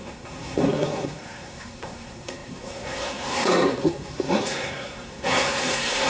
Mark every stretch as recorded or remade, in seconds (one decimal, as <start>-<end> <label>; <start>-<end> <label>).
0.0-6.1 remade